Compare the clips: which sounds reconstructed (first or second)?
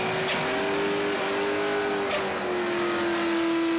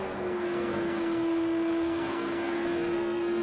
second